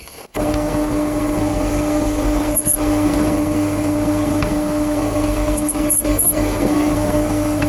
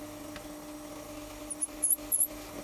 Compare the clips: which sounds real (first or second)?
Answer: second